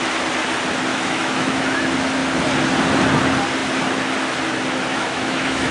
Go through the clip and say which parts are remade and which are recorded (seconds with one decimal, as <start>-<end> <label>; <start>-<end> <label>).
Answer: 0.0-0.9 recorded; 0.9-1.8 remade; 1.8-4.9 recorded; 4.9-5.7 remade